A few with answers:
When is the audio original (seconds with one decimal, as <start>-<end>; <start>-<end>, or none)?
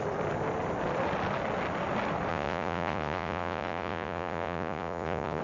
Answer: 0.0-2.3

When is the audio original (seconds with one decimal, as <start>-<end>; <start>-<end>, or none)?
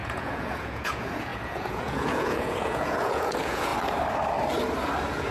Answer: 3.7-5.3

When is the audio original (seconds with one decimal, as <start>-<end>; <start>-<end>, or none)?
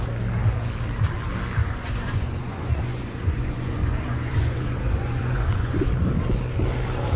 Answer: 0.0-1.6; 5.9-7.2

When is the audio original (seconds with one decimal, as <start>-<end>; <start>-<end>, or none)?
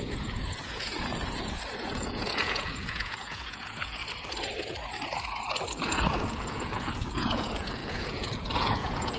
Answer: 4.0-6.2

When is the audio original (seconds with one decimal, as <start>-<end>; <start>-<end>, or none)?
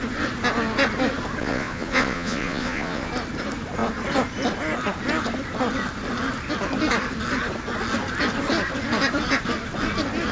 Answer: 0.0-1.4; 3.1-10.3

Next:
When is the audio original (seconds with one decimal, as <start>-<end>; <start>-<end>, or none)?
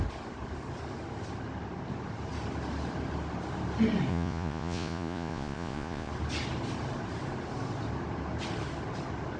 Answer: 0.0-4.1; 6.1-9.4